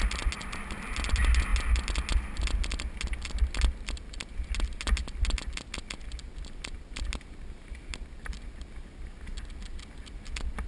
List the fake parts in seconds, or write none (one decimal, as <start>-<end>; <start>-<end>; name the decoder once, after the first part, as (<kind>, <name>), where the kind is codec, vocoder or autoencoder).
none